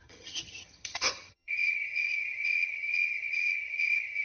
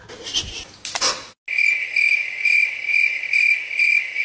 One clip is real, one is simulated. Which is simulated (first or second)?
first